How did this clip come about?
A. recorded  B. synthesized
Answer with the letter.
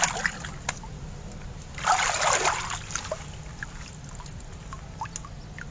A